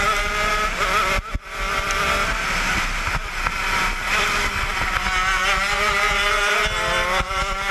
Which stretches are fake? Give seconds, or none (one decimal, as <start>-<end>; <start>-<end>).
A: none